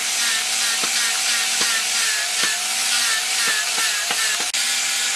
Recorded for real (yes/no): yes